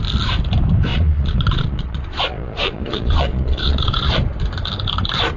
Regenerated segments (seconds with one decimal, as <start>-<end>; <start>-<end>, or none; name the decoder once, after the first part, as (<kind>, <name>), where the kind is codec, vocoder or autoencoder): 0.9-4.1 (vocoder, Vocos)